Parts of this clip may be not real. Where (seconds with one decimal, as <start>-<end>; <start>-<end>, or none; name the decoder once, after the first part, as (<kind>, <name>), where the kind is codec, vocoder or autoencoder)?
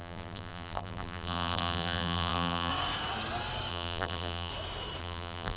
0.0-2.7 (vocoder, BigVGAN v2); 3.7-4.5; 5.0-5.6